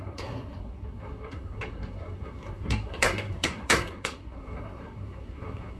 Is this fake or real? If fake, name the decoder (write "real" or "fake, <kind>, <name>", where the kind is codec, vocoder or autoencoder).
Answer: fake, codec, SNAC